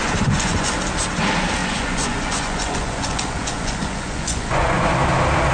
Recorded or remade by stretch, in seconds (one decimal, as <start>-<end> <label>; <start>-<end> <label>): 0.0-0.7 remade; 0.7-1.6 recorded; 1.6-4.9 remade; 4.9-5.5 recorded